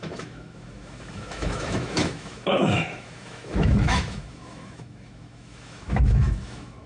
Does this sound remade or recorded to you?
remade